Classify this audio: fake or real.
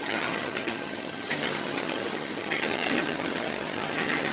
fake